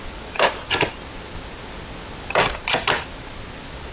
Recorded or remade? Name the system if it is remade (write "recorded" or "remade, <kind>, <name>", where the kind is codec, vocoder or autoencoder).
recorded